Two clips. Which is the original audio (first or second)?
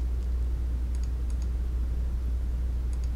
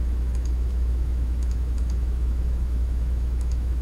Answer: first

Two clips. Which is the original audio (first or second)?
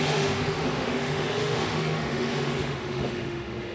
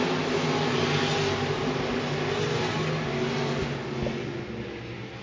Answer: second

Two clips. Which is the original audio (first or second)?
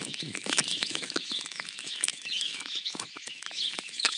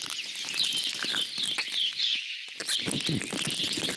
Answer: second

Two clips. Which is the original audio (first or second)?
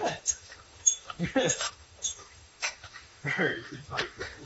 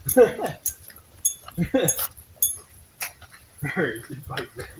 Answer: second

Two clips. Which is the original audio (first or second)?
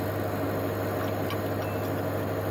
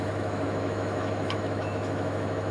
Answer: first